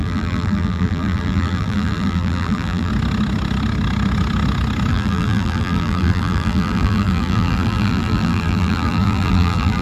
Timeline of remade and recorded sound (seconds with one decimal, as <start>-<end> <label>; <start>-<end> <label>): 0.0-2.9 remade; 2.9-4.9 recorded; 4.9-9.8 remade